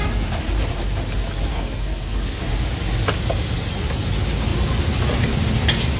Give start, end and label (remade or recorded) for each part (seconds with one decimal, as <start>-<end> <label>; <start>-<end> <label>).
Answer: 0.0-1.5 recorded; 1.5-2.5 remade; 2.5-6.0 recorded